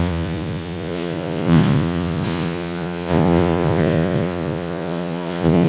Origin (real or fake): fake